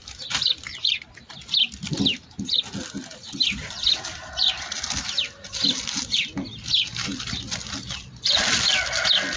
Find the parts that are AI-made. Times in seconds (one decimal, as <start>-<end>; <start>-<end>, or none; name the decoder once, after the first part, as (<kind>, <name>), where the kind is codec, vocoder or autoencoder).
none